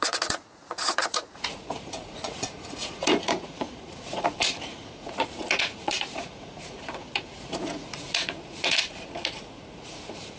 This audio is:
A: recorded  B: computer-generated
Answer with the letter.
B